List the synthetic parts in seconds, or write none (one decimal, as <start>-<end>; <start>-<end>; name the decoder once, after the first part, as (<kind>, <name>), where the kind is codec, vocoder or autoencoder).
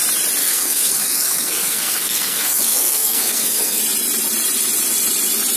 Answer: 0.4-3.8 (codec, SNAC)